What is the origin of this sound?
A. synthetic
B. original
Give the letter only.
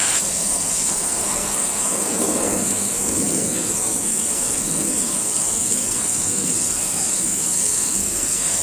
A